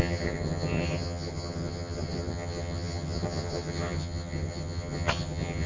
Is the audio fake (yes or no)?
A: yes